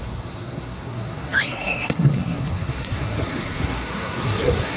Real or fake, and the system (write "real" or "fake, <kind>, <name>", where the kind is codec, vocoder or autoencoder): fake, codec, SNAC